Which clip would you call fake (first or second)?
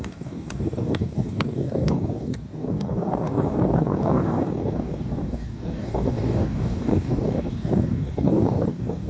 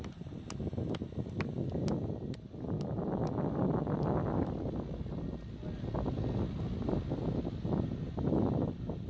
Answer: first